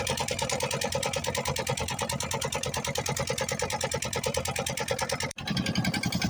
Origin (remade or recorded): remade